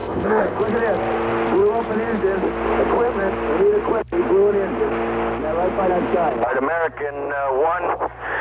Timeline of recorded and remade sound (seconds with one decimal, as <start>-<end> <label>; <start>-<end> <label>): 0.0-0.6 remade; 0.6-8.4 recorded